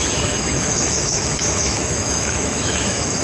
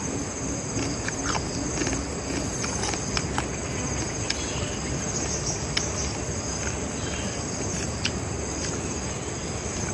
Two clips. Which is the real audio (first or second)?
second